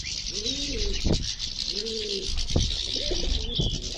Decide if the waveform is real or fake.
real